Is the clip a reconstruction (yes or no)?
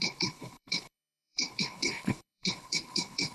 yes